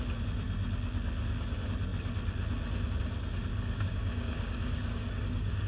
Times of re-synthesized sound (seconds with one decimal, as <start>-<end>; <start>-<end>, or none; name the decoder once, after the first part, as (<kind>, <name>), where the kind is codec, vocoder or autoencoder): 3.5-5.7 (codec, DAC)